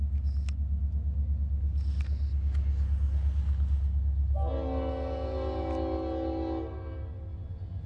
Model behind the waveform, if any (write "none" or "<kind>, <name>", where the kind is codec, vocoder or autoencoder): none